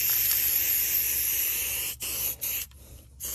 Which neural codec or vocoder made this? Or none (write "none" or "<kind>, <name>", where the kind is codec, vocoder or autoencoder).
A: none